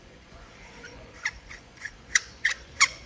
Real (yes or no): no